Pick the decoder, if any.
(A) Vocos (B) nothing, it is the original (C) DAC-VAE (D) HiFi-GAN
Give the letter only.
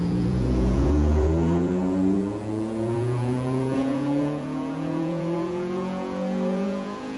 A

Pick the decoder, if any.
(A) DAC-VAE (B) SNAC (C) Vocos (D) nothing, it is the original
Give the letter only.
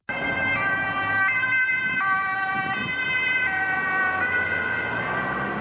D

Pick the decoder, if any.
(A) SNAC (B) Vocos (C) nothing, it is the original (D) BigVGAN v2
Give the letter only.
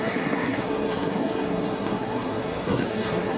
A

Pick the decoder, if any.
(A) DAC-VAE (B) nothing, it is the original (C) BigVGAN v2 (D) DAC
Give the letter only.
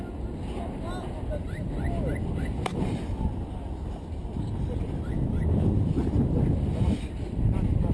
B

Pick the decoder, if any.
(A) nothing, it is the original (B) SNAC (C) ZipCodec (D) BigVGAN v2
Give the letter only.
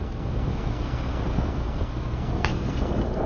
B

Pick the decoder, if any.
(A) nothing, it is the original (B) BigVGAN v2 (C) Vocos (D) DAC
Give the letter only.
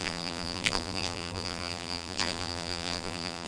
B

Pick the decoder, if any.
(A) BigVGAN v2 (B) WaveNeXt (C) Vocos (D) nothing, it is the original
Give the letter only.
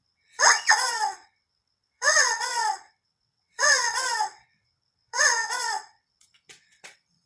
B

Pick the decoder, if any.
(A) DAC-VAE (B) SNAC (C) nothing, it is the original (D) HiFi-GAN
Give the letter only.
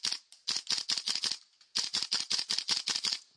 C